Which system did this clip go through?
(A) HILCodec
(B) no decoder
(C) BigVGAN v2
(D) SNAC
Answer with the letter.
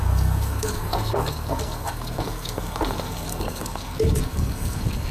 D